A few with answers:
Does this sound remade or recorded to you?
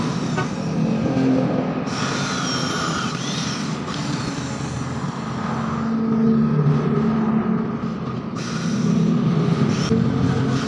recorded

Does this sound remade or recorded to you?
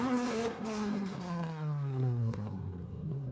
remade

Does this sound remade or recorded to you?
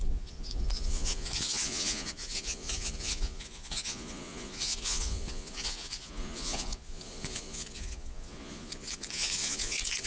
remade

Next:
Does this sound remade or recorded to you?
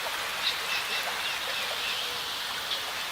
recorded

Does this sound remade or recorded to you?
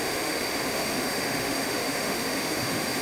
remade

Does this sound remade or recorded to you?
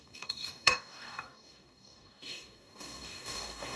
remade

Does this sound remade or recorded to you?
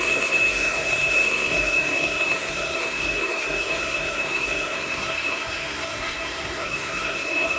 remade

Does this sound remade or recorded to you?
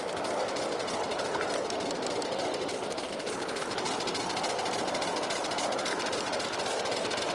recorded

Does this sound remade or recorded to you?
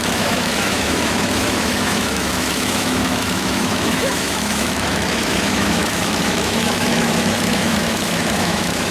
remade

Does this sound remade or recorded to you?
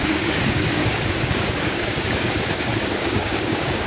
remade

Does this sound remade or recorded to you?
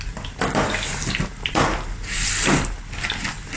recorded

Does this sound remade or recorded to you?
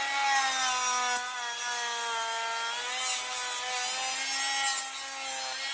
recorded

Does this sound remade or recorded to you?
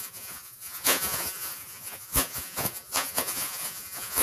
remade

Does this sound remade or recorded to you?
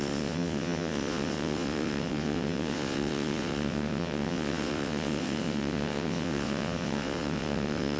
remade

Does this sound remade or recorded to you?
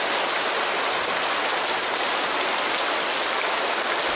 recorded